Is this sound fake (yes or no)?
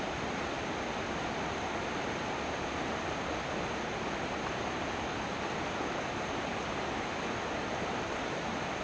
yes